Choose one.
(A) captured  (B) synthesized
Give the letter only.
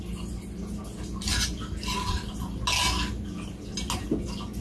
A